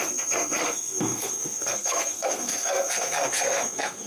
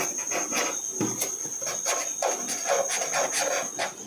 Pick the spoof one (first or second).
first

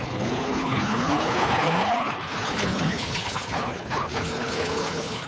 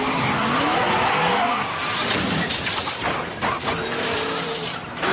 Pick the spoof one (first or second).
first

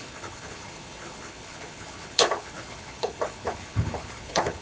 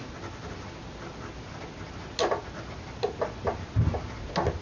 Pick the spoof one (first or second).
first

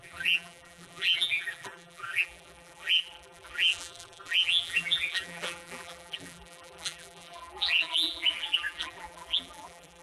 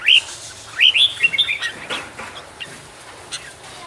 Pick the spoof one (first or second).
first